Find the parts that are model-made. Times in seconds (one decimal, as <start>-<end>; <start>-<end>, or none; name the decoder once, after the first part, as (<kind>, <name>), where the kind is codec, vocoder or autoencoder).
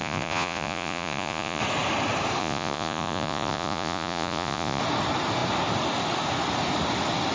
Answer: 0.0-1.6 (vocoder, Vocos); 2.4-4.8